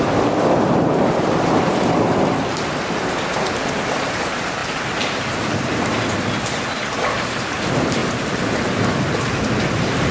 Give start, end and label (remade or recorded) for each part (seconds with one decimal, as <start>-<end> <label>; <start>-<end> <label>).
0.0-4.6 remade; 4.6-6.4 recorded; 6.4-10.1 remade